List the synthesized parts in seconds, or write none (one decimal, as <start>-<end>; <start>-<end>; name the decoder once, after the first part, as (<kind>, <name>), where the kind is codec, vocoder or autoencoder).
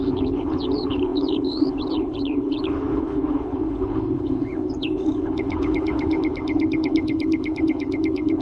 0.0-8.4 (codec, HILCodec)